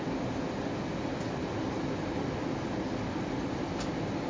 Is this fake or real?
real